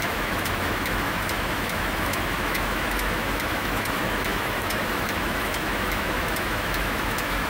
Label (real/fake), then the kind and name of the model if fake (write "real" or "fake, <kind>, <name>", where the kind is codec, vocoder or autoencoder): fake, autoencoder, DAC-VAE